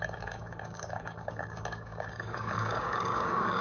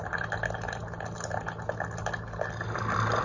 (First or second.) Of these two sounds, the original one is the second